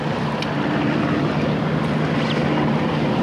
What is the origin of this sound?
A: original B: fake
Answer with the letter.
A